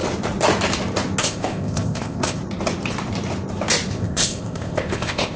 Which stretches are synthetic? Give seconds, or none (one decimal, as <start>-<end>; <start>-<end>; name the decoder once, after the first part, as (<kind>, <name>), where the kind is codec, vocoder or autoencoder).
1.2-2.4 (codec, ZipCodec); 3.9-5.4